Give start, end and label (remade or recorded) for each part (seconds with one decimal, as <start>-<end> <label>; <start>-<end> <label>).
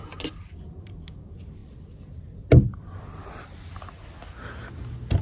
0.0-5.2 recorded